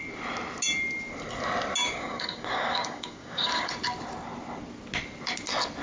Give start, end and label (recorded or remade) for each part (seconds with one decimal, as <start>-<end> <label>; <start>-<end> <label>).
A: 0.0-1.8 recorded; 1.8-3.7 remade; 3.7-5.8 recorded